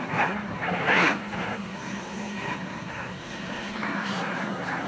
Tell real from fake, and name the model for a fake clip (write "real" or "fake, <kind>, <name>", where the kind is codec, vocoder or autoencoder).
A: fake, codec, SNAC